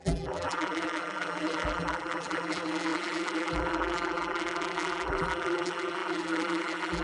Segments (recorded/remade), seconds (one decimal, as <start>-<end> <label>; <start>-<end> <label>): 0.0-7.0 remade